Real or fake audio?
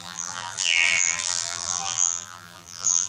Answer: fake